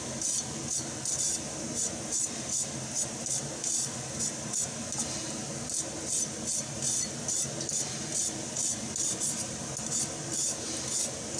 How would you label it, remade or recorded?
recorded